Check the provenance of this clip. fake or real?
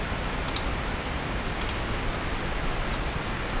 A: real